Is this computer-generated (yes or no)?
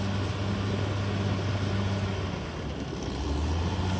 no